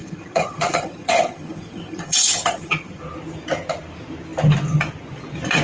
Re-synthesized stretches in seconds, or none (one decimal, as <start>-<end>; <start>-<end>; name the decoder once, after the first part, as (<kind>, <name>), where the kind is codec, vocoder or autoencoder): 0.0-3.0 (vocoder, HiFi-GAN)